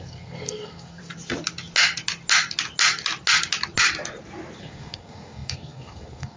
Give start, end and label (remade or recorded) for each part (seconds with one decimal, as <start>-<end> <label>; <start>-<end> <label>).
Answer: 0.0-1.0 remade; 1.0-4.6 recorded; 4.6-6.4 remade